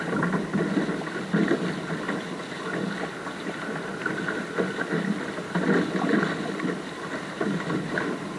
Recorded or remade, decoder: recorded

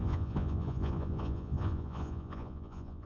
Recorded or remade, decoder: remade, vocoder, Vocos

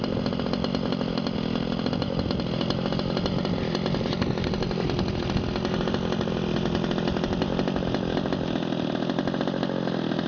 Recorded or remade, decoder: recorded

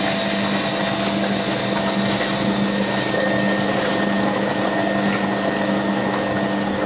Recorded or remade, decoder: recorded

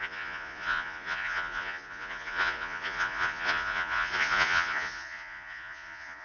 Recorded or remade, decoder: remade, vocoder, Vocos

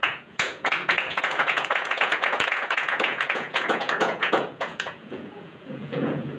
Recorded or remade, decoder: remade, vocoder, Vocos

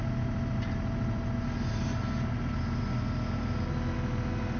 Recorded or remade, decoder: recorded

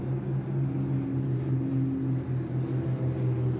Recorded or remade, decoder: recorded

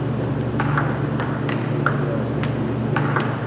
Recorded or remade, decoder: recorded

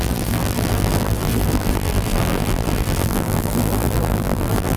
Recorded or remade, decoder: remade, vocoder, BigVGAN v2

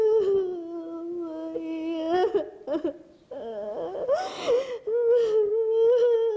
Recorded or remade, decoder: recorded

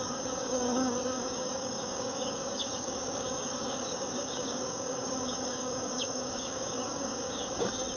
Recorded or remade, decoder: remade, codec, DAC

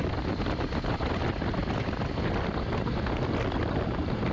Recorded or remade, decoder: recorded